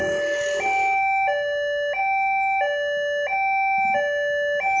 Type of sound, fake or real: real